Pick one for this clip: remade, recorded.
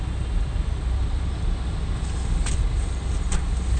recorded